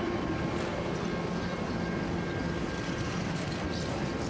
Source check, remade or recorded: recorded